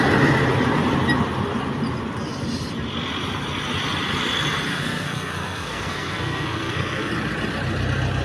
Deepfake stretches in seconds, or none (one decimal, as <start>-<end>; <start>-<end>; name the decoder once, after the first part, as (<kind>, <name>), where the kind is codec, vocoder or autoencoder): 4.7-7.1 (codec, SNAC)